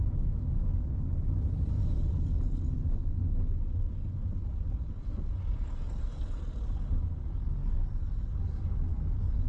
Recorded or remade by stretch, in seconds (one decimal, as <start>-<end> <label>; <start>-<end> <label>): 0.0-9.5 recorded

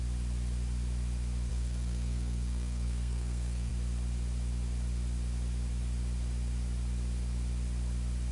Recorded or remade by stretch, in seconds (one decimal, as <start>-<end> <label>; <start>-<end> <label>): 0.0-1.5 recorded; 1.5-3.7 remade; 3.7-8.3 recorded

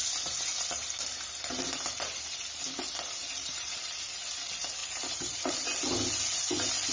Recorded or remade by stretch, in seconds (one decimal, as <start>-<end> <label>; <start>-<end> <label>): 0.0-0.5 recorded; 0.5-1.0 remade; 1.0-3.2 recorded; 3.2-3.8 remade; 3.8-4.8 recorded; 4.8-5.5 remade; 5.5-6.9 recorded

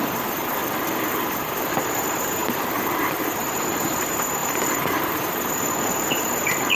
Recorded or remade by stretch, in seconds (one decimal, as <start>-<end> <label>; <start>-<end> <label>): 0.0-0.6 remade; 0.6-1.1 recorded; 1.1-6.7 remade

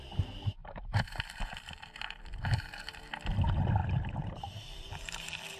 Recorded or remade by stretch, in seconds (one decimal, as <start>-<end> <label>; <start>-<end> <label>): 0.0-0.6 recorded; 0.6-3.1 remade; 3.1-3.8 recorded; 3.8-5.6 remade

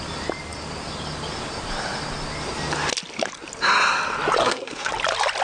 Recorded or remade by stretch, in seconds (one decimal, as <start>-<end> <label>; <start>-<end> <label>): 0.0-4.4 recorded; 4.4-4.9 remade; 4.9-5.4 recorded

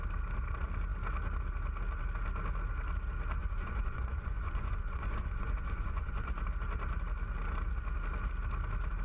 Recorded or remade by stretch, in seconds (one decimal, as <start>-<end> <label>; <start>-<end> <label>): 0.0-3.4 recorded; 3.4-6.4 remade; 6.4-9.0 recorded

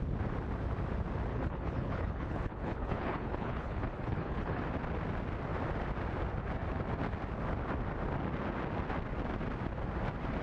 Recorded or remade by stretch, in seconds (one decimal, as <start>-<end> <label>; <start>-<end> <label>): 0.0-1.3 recorded; 1.3-4.6 remade; 4.6-10.4 recorded